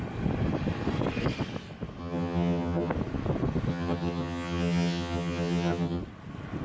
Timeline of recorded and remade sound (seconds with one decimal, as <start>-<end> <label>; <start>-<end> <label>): 0.0-2.0 recorded; 2.0-2.9 remade; 2.9-3.7 recorded; 3.7-6.0 remade; 6.0-6.6 recorded